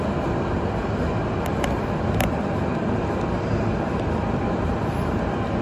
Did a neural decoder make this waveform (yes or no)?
no